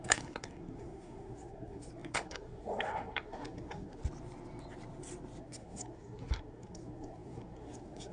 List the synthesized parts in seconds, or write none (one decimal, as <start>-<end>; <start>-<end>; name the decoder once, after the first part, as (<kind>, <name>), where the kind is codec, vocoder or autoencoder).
0.0-4.0 (codec, SNAC); 5.4-8.1